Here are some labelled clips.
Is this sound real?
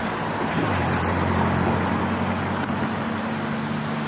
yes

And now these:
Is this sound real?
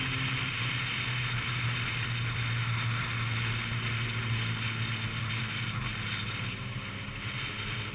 yes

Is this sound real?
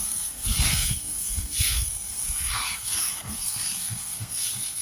no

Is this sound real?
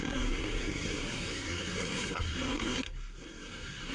no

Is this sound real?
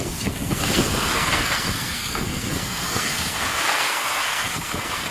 no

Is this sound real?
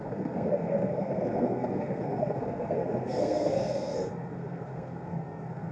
no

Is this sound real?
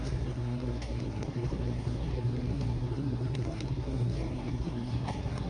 no